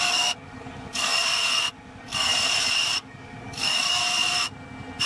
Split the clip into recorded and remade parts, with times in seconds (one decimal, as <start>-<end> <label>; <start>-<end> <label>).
0.0-2.3 remade; 2.3-2.9 recorded; 2.9-4.0 remade; 4.0-5.1 recorded